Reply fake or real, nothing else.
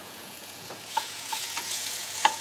fake